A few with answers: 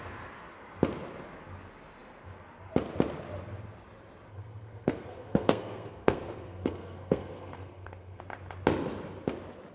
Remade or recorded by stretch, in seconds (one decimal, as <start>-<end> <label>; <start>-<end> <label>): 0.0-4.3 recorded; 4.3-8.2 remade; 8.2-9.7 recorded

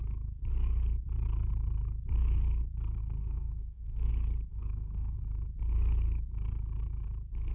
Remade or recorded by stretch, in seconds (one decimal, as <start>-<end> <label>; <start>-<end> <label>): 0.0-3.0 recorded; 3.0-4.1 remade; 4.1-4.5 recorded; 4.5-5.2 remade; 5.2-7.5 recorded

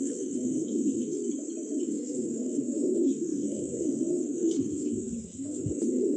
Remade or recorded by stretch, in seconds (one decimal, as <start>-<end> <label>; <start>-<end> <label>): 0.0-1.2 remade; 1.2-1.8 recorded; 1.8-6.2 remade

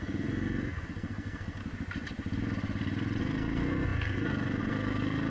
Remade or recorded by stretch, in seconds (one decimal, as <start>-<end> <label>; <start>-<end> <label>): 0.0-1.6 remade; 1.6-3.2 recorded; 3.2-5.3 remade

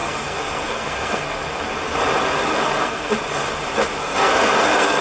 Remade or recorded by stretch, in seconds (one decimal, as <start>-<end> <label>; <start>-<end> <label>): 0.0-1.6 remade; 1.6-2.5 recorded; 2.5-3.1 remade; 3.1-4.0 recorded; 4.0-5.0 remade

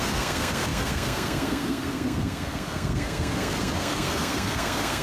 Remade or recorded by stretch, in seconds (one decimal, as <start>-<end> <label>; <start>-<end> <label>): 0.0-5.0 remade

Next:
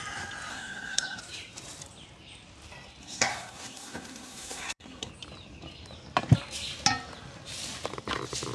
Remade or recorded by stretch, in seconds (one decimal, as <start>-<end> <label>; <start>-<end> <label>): 0.0-0.5 recorded; 0.5-1.2 remade; 1.2-3.0 recorded; 3.0-5.1 remade; 5.1-8.5 recorded